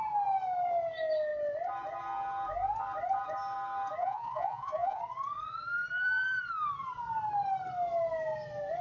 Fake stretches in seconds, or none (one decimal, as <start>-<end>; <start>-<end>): 4.0-5.0